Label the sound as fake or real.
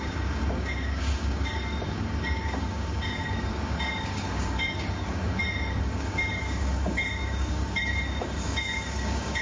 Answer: fake